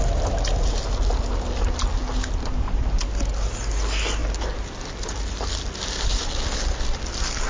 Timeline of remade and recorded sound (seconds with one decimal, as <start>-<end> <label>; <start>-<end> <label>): 0.0-7.5 recorded